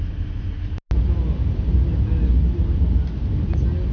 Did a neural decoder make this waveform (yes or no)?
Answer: no